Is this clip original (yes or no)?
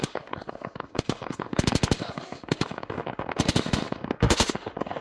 no